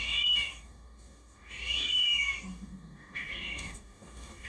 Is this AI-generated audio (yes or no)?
yes